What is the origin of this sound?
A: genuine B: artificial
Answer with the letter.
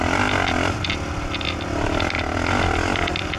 A